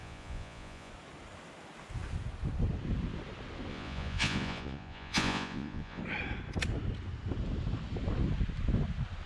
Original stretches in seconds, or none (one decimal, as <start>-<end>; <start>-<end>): 0.9-3.7; 6.0-9.3